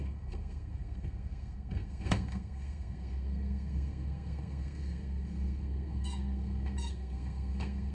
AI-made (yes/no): yes